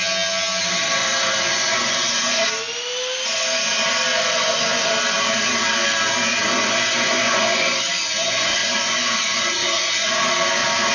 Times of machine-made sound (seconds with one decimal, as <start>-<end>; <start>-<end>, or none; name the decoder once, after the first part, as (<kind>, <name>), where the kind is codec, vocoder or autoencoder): 1.0-2.5 (vocoder, Vocos); 4.1-4.9; 6.3-10.3